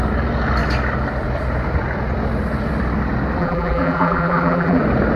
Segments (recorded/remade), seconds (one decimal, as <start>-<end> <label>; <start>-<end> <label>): 0.0-3.4 recorded; 3.4-4.8 remade; 4.8-5.2 recorded